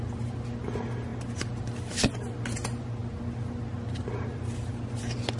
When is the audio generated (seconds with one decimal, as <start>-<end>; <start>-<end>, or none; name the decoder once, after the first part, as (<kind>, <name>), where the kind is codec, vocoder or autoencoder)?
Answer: none